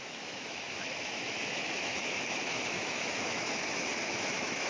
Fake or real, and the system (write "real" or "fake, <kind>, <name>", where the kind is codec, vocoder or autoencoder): fake, autoencoder, DAC-VAE